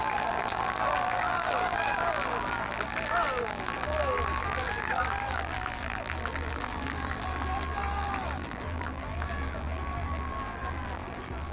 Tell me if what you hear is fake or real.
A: fake